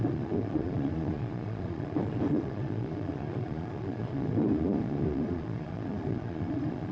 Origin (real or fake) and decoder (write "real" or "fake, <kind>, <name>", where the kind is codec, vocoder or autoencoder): fake, vocoder, Vocos